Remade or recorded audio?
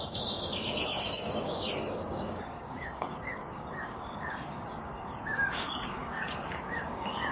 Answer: remade